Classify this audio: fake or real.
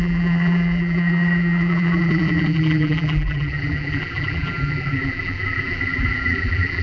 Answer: fake